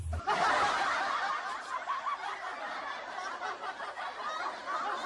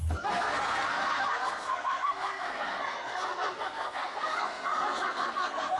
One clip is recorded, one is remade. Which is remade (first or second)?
second